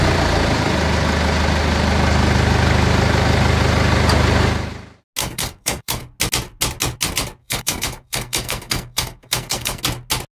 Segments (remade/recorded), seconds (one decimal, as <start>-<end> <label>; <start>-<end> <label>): 0.0-5.2 recorded; 5.2-6.0 remade; 6.0-7.4 recorded; 7.4-9.8 remade; 9.8-10.4 recorded